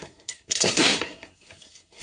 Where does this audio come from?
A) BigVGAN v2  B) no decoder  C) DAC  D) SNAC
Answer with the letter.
D